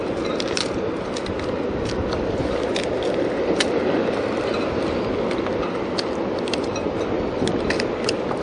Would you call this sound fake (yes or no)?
no